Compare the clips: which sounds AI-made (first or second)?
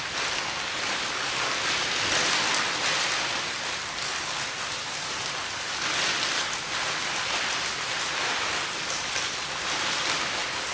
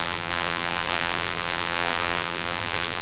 second